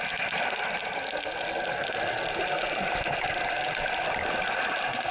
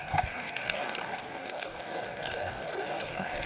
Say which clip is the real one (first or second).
first